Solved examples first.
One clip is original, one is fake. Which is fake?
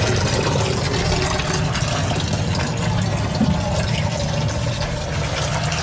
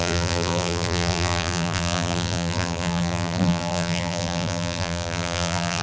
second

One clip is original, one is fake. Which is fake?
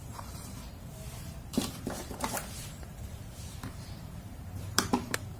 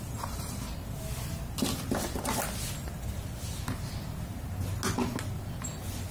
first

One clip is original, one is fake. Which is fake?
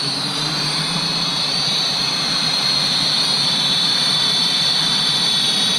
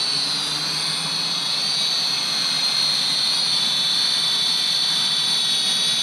first